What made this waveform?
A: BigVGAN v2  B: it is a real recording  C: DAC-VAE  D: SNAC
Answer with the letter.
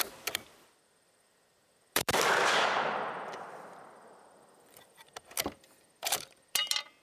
A